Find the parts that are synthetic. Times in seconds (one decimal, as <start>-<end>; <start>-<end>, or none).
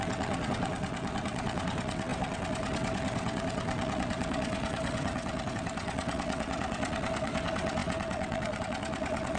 0.0-9.4